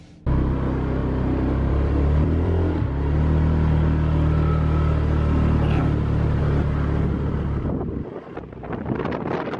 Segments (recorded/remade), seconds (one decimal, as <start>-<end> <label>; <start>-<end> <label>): 0.0-1.0 recorded; 1.0-2.8 remade; 2.8-5.8 recorded; 5.8-6.4 remade; 6.4-9.6 recorded